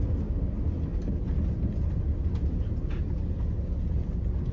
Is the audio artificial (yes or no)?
no